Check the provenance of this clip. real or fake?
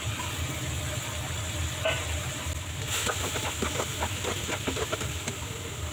real